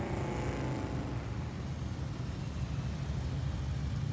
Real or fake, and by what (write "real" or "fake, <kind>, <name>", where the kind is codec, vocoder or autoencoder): real